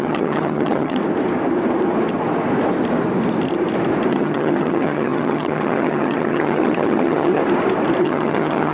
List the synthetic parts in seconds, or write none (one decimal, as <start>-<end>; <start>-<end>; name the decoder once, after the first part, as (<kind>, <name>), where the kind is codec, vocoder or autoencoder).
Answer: 0.0-1.0 (vocoder, HiFi-GAN); 4.1-7.4; 8.0-8.7